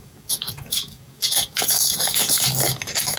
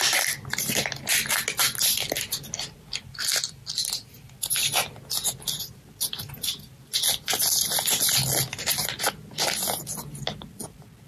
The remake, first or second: first